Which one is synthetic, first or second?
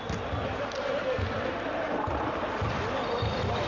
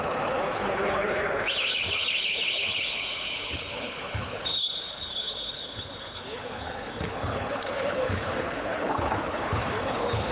second